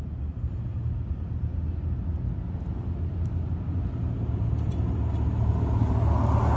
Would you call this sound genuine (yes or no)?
yes